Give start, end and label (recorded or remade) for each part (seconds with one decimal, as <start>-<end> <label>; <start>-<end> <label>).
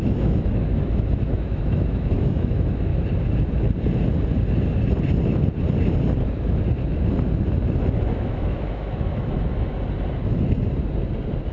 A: 0.0-2.9 remade; 2.9-8.1 recorded; 8.1-9.7 remade; 9.7-11.5 recorded